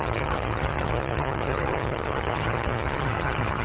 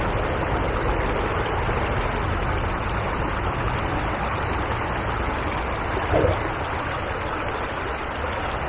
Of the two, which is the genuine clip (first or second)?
second